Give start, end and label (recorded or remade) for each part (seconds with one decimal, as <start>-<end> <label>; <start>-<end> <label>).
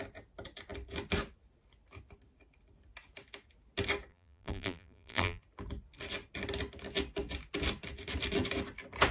0.0-4.1 recorded; 4.1-5.4 remade; 5.4-9.1 recorded